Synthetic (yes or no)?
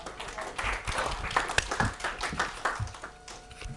no